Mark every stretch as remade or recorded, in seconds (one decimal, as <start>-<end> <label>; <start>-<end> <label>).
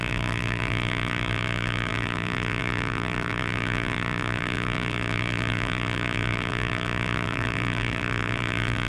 0.0-8.9 remade